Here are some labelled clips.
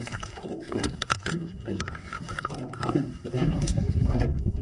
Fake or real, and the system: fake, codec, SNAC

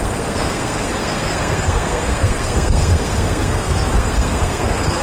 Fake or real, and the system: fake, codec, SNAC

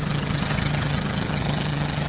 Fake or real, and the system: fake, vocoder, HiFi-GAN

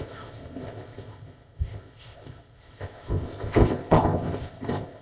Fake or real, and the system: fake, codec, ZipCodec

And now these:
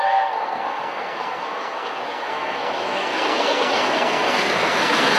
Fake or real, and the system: fake, codec, SNAC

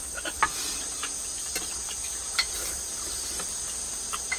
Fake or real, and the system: real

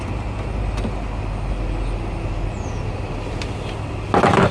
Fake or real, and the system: real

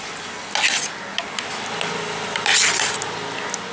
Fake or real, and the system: real